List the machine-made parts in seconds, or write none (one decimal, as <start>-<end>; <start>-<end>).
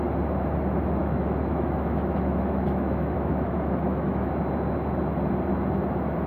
1.0-4.3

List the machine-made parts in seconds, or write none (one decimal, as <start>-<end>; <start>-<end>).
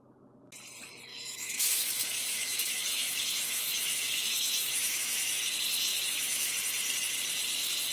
1.1-5.4; 5.9-6.5